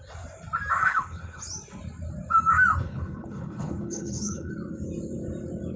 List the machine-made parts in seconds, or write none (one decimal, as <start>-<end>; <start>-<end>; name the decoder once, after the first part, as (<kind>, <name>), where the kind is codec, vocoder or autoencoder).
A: 0.8-1.4 (codec, HILCodec); 2.8-4.5